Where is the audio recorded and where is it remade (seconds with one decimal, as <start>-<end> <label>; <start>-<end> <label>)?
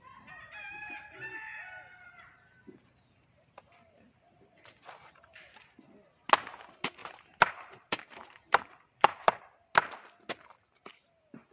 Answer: 0.0-7.0 recorded; 7.0-9.4 remade; 9.4-11.5 recorded